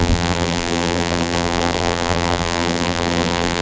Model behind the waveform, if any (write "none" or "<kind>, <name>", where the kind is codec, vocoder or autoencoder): vocoder, BigVGAN v2